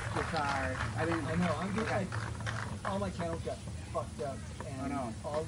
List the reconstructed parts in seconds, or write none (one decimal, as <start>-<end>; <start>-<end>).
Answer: none